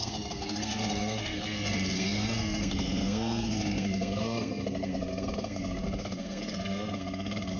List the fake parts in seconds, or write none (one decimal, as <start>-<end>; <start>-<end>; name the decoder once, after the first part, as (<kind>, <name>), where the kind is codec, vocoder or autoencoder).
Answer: 0.0-7.6 (codec, SNAC)